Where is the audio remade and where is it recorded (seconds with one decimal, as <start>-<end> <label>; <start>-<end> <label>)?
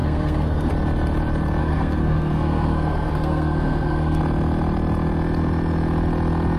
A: 0.0-0.7 remade; 0.7-1.6 recorded; 1.6-4.2 remade; 4.2-6.6 recorded